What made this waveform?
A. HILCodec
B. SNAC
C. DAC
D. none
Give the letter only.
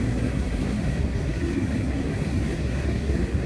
B